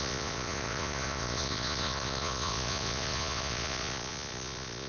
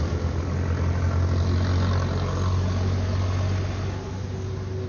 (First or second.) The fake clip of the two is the first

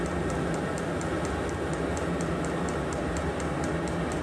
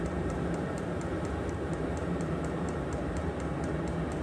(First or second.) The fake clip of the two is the second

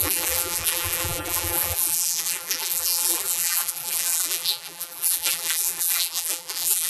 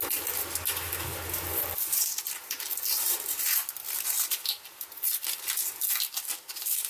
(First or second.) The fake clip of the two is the first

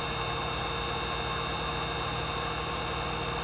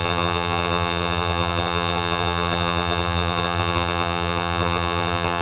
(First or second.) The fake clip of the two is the second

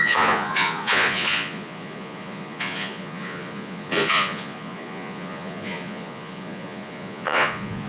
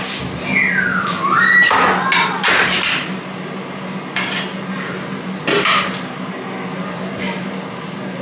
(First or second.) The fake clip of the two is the first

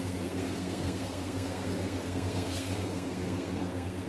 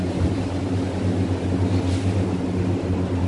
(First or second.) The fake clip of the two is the first